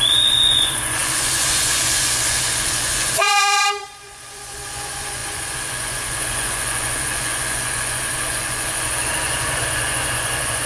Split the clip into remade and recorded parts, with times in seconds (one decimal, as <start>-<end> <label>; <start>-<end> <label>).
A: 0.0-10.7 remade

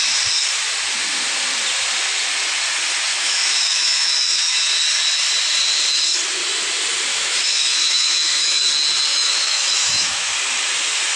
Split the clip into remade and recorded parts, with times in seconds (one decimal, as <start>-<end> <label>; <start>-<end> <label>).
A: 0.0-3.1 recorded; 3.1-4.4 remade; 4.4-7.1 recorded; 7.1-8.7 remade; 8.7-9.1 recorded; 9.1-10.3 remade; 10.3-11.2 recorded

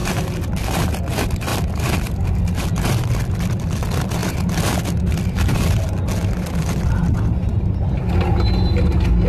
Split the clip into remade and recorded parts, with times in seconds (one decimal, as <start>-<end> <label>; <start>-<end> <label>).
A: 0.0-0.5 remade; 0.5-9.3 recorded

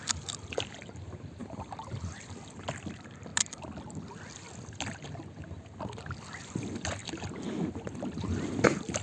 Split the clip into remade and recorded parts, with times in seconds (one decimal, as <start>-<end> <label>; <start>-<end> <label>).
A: 0.0-9.0 recorded

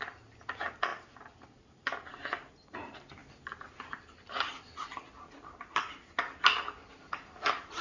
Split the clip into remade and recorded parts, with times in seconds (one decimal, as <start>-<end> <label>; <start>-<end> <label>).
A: 0.0-7.8 recorded

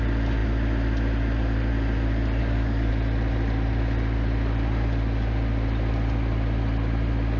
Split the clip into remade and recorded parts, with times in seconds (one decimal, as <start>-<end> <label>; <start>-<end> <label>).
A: 0.0-2.4 recorded; 2.4-2.9 remade; 2.9-7.4 recorded

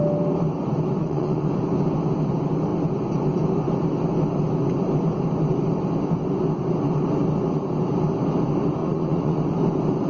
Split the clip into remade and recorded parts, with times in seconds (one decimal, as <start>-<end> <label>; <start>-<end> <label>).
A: 0.0-1.0 recorded; 1.0-1.5 remade; 1.5-8.8 recorded; 8.8-9.4 remade; 9.4-10.1 recorded